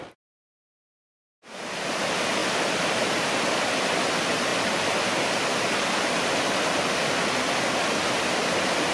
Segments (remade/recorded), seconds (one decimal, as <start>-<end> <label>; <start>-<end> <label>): 0.0-8.9 recorded